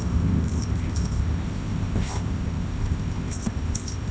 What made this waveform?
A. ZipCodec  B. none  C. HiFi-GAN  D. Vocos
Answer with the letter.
A